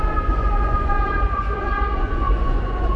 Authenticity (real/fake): fake